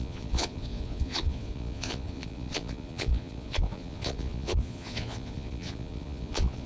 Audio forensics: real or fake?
fake